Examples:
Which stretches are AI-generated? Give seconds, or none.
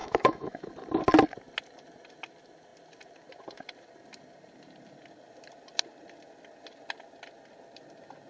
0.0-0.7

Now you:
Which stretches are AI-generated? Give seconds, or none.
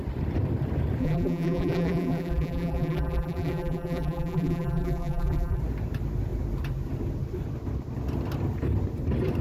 1.0-5.6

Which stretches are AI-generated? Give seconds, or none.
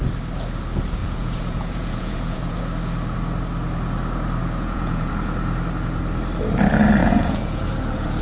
1.0-2.6; 4.4-5.1; 7.0-8.2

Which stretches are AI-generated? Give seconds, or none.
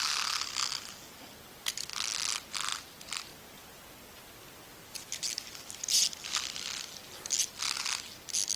none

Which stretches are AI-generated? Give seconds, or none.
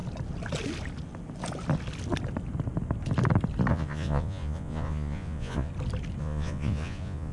3.7-5.7; 6.2-7.3